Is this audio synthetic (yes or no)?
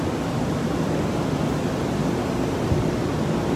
no